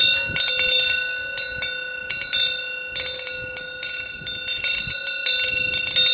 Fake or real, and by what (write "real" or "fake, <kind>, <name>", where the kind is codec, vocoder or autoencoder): real